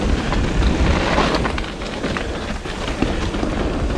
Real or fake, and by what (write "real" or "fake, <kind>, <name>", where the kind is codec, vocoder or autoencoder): real